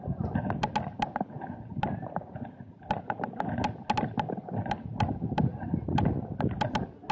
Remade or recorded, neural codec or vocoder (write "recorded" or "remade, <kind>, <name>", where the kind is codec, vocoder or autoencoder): recorded